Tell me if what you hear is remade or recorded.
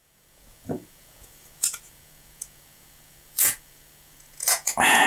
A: remade